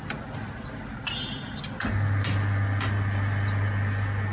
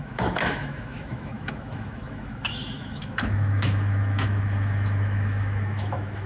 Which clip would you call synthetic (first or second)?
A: second